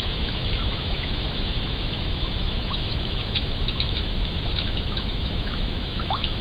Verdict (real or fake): fake